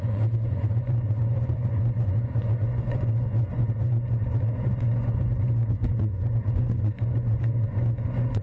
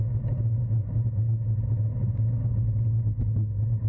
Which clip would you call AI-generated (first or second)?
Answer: first